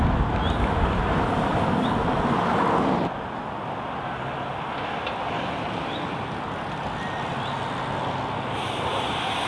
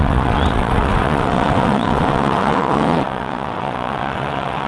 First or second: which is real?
first